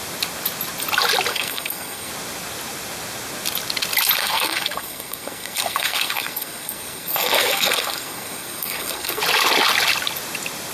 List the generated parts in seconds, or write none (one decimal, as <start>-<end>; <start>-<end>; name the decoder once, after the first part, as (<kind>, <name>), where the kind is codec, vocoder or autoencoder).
1.3-2.1 (codec, SNAC); 4.2-9.2